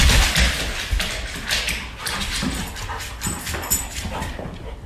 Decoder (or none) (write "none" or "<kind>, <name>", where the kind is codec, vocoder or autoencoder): none